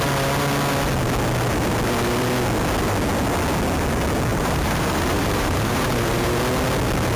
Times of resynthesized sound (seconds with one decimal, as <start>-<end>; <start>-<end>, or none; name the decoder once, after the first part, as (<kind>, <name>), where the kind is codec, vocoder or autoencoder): 4.3-6.4 (vocoder, BigVGAN v2)